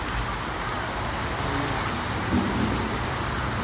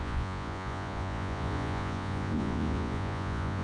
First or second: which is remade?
second